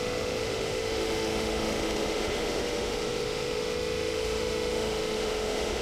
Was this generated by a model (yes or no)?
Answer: yes